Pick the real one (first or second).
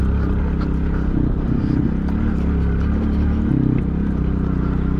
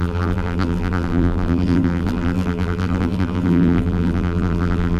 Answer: first